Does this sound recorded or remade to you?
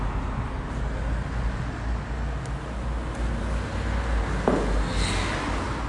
recorded